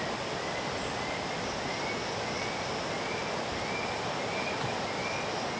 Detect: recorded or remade recorded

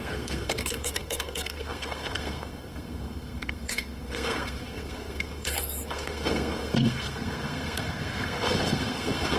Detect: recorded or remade remade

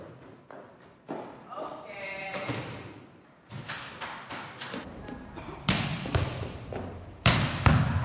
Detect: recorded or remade remade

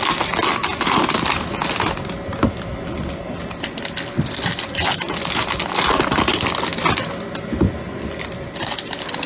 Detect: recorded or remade recorded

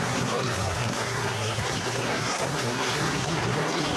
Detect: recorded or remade remade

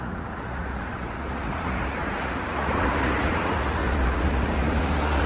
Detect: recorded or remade remade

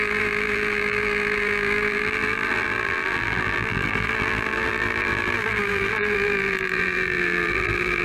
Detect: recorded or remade remade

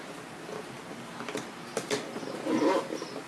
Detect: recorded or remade recorded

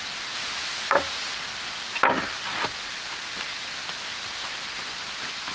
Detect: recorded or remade recorded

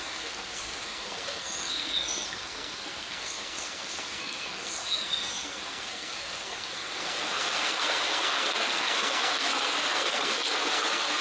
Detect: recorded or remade remade